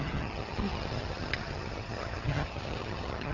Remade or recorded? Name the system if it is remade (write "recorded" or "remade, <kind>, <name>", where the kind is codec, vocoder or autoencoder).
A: remade, vocoder, HiFi-GAN